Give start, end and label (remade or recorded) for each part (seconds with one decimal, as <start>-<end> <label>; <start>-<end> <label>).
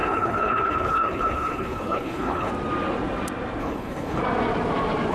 0.0-2.5 remade; 2.5-3.6 recorded; 3.6-4.2 remade; 4.2-5.1 recorded